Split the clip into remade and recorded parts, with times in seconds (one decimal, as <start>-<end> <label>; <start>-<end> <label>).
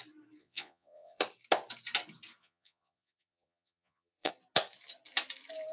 0.0-0.4 recorded; 0.4-1.2 remade; 1.2-2.4 recorded; 2.4-4.3 remade; 4.3-5.7 recorded